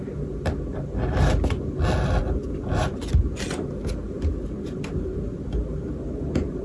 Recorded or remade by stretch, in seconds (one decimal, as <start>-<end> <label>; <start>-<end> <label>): 0.0-6.6 recorded